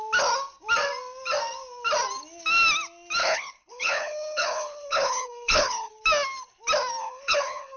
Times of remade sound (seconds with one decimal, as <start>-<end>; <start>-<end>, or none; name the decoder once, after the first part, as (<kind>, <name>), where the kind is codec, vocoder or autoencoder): 3.2-5.9 (codec, HILCodec); 7.0-7.8